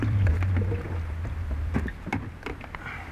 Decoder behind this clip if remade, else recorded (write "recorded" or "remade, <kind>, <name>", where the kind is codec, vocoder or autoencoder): recorded